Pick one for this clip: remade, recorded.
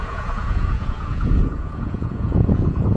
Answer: remade